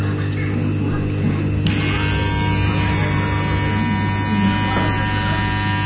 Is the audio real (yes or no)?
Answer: yes